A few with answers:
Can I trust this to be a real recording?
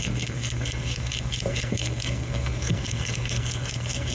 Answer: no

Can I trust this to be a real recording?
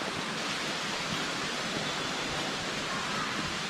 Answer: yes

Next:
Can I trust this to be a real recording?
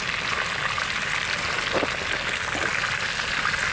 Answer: yes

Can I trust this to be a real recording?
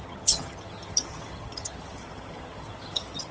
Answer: no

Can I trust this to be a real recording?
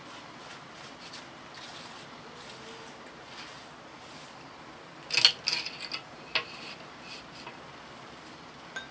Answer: yes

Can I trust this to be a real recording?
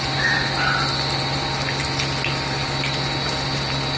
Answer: yes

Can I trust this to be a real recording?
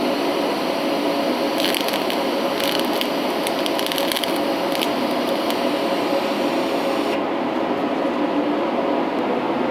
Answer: yes